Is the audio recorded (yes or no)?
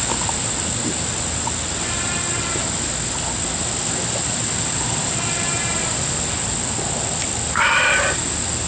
yes